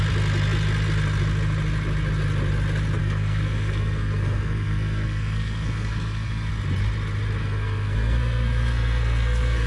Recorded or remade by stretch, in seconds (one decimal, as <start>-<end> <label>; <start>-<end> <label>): 0.0-3.0 recorded; 3.0-6.5 remade; 6.5-7.4 recorded; 7.4-9.7 remade

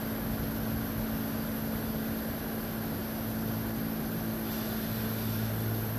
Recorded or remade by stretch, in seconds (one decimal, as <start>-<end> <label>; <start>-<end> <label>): 0.0-6.0 recorded

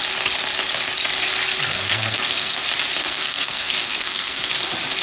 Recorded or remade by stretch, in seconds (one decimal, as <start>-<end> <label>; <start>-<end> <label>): 0.0-1.7 recorded; 1.7-2.6 remade; 2.6-3.0 recorded; 3.0-4.5 remade; 4.5-5.0 recorded

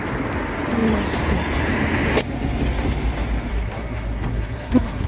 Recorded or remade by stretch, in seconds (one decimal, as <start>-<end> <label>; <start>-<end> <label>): 0.0-3.5 recorded; 3.5-5.1 remade

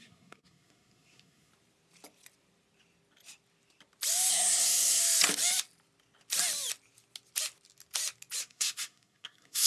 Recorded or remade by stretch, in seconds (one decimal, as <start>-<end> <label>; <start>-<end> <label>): 0.0-1.5 remade; 1.5-4.3 recorded; 4.3-5.0 remade; 5.0-8.4 recorded; 8.4-9.7 remade

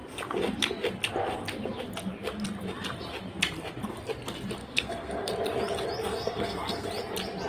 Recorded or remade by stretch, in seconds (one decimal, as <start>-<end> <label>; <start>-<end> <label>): 0.0-4.6 recorded; 4.6-5.3 remade; 5.3-6.0 recorded; 6.0-6.9 remade; 6.9-7.5 recorded